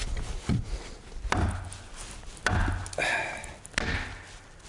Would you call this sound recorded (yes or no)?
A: yes